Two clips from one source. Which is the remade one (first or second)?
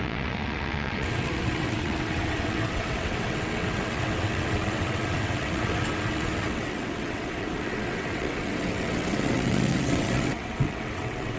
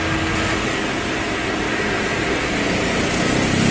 first